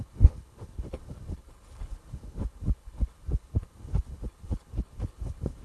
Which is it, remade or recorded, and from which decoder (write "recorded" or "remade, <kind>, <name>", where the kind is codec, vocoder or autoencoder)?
remade, codec, HILCodec